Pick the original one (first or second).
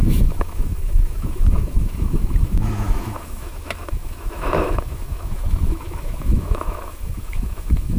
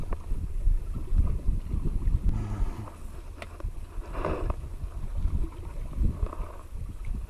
second